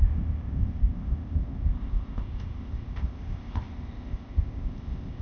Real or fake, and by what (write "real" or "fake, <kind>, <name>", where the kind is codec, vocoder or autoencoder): fake, codec, ZipCodec